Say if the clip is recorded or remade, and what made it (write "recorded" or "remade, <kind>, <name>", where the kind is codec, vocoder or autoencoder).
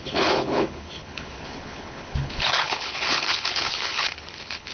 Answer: remade, codec, HILCodec